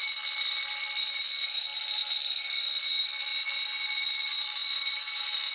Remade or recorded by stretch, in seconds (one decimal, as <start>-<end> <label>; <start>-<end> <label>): 0.0-3.3 remade; 3.3-3.8 recorded; 3.8-5.5 remade